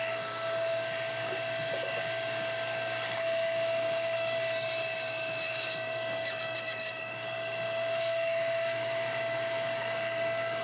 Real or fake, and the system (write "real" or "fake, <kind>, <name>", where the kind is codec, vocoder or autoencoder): fake, codec, DAC